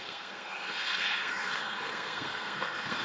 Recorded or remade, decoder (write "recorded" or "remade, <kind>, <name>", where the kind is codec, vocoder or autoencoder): remade, codec, SNAC